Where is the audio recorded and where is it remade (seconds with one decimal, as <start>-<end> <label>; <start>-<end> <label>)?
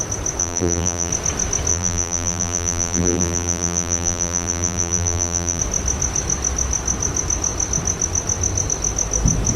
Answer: 0.0-0.4 recorded; 0.4-1.1 remade; 1.1-1.7 recorded; 1.7-5.6 remade; 5.6-9.6 recorded